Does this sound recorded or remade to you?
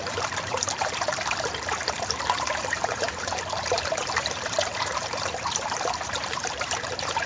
remade